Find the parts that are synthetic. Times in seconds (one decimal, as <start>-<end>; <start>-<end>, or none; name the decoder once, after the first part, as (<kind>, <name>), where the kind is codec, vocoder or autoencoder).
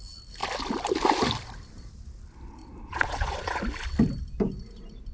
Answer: 2.6-3.6 (vocoder, Vocos)